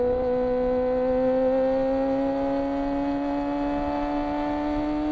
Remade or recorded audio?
recorded